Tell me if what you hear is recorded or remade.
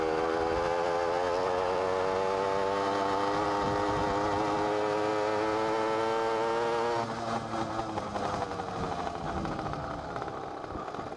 recorded